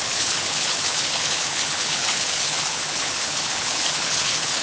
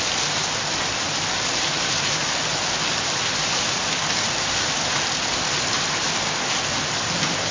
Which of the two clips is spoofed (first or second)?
first